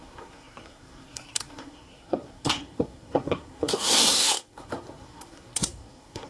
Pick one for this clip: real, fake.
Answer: fake